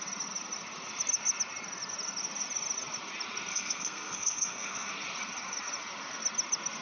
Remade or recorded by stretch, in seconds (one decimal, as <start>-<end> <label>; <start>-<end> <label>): 0.0-3.5 recorded; 3.5-4.9 remade; 4.9-6.8 recorded